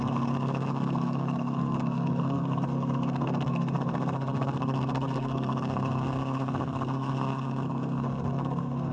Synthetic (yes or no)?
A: yes